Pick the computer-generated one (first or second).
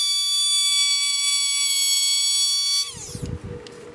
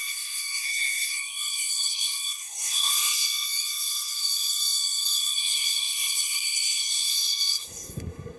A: second